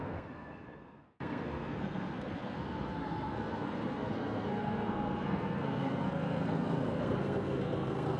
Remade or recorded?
remade